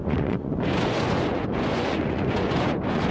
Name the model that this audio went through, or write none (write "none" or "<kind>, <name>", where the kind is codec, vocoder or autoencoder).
vocoder, Vocos